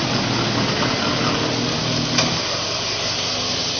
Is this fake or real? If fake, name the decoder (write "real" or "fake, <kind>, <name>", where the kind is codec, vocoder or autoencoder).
real